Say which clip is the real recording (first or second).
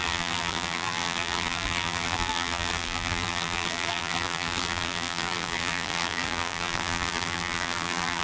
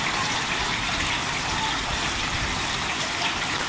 second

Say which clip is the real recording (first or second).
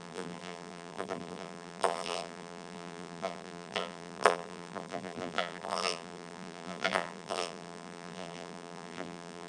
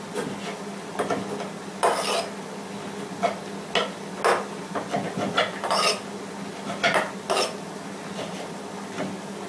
second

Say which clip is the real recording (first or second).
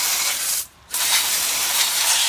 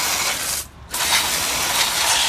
second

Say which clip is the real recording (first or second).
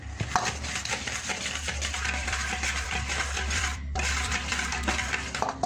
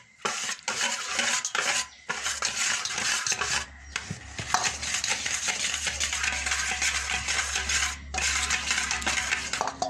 second